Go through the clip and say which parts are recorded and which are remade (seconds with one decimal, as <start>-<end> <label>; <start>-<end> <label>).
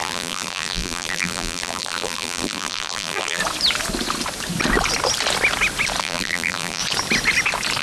0.0-3.4 remade; 3.4-6.0 recorded; 6.0-6.8 remade; 6.8-7.8 recorded